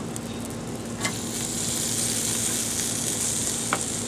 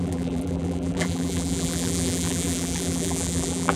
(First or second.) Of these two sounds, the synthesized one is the second